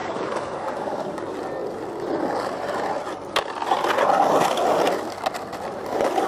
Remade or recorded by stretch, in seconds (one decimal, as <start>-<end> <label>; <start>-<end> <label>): 0.0-1.2 remade; 1.2-6.3 recorded